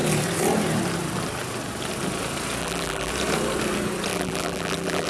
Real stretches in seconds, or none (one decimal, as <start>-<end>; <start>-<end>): 0.0-2.6; 3.1-4.1

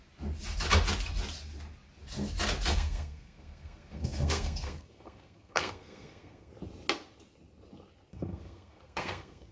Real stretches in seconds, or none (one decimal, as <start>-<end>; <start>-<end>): 0.0-2.7; 6.5-8.1

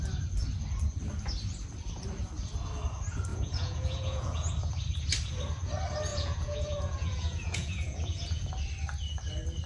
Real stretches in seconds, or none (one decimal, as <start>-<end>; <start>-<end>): 0.0-3.3; 4.5-6.1; 8.5-9.7

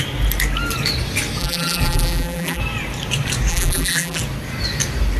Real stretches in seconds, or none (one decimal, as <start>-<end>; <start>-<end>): 0.0-1.4; 2.6-3.5; 4.2-5.2

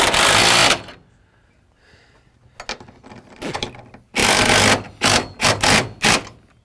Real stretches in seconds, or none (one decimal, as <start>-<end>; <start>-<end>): 0.0-6.6